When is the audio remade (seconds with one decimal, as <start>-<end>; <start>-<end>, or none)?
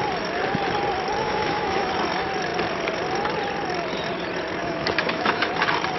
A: 1.2-1.9; 4.6-5.5